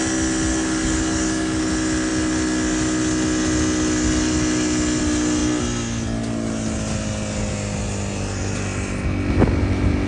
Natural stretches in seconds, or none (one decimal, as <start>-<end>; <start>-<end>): 0.0-0.5; 1.6-10.1